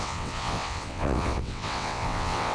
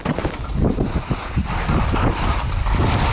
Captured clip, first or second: second